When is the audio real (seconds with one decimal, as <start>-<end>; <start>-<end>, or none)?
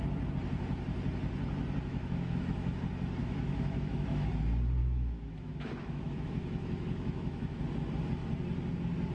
0.0-1.9; 2.8-3.2; 4.3-4.8; 7.6-9.1